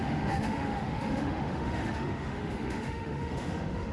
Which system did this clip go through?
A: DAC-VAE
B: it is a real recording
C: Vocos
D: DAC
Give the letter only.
A